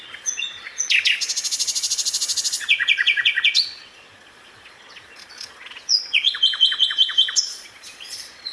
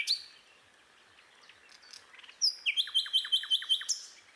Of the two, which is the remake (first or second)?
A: first